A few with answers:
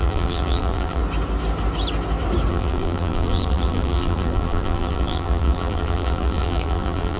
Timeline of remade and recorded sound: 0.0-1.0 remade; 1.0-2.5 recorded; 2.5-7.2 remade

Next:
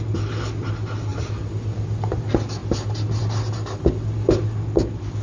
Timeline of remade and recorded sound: 0.0-1.1 recorded; 1.1-2.2 remade; 2.2-5.2 recorded

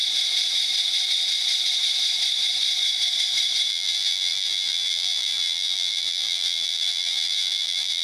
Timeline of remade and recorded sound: 0.0-3.7 recorded; 3.7-8.0 remade

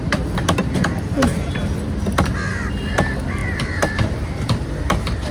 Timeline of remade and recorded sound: 0.0-3.4 recorded; 3.4-5.3 remade

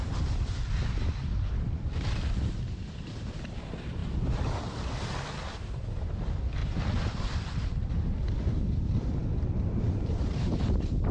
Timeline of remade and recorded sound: 0.0-4.0 remade; 4.0-4.7 recorded; 4.7-6.6 remade; 6.6-7.1 recorded; 7.1-11.1 remade

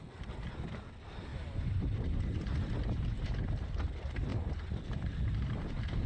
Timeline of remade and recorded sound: 0.0-1.3 recorded; 1.3-2.2 remade; 2.2-6.1 recorded